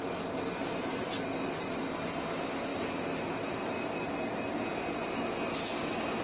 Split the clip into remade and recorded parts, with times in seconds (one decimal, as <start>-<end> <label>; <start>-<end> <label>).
0.0-0.6 recorded; 0.6-1.8 remade; 1.8-6.2 recorded